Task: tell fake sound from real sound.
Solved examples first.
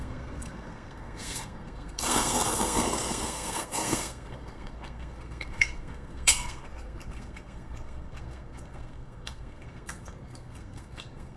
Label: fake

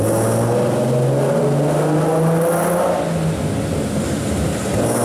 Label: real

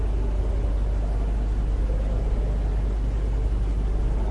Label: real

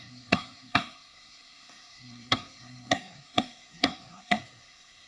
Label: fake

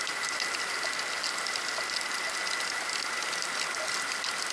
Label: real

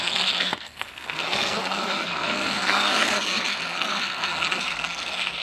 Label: fake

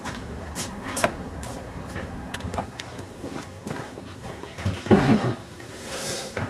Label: fake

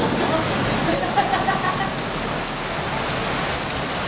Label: real